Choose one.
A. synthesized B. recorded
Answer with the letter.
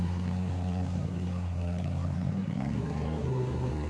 A